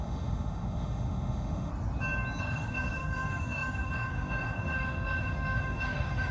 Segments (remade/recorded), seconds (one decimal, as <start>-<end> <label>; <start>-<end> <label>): 0.0-1.7 remade; 1.7-2.4 recorded; 2.4-6.3 remade